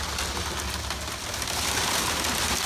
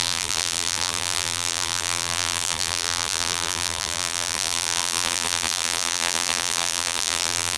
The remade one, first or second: second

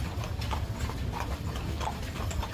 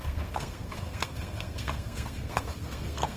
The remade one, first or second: second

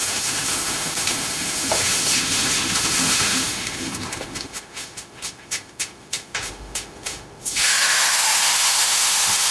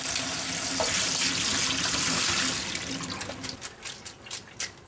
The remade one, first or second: first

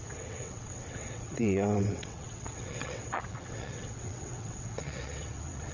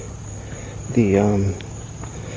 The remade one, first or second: first